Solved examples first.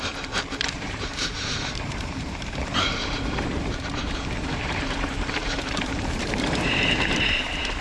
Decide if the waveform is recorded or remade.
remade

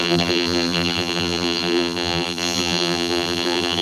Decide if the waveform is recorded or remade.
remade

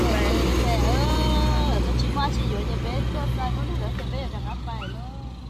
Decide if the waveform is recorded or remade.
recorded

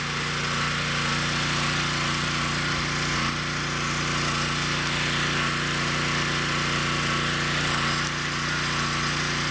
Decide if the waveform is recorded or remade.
recorded